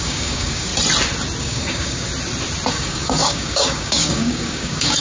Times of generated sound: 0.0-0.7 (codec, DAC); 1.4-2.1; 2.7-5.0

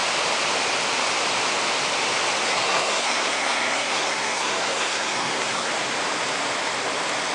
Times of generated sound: 2.5-5.7 (codec, SNAC)

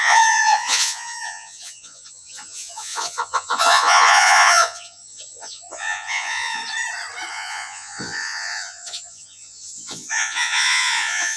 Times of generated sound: 0.0-6.6 (vocoder, Vocos); 7.3-11.4

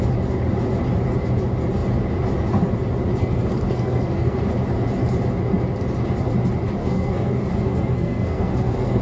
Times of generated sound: 3.2-4.4 (codec, SNAC); 6.8-9.0